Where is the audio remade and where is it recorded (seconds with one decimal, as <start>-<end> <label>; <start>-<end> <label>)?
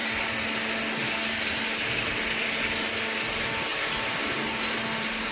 0.0-5.3 recorded